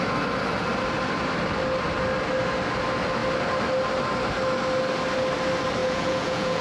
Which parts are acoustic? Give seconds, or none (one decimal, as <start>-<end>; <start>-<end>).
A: 0.0-5.8